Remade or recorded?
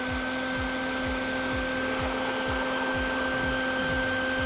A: recorded